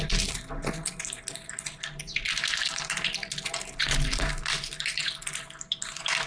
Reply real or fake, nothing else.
real